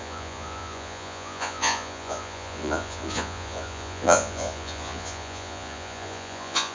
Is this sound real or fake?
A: fake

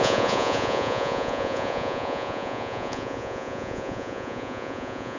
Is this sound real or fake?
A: fake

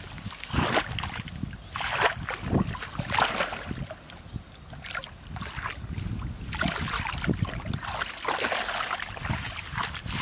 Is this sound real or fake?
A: real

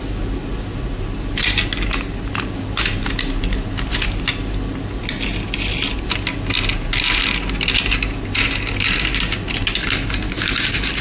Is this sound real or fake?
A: real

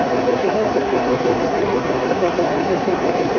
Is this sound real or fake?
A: fake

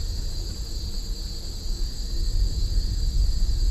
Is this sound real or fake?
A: real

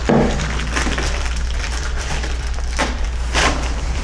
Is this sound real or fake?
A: fake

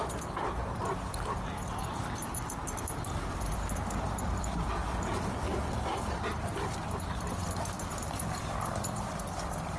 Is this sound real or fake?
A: fake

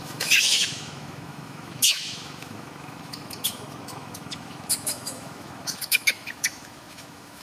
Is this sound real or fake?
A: fake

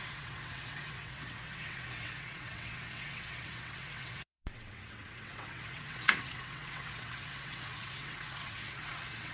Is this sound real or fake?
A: fake